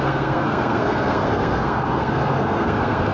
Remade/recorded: remade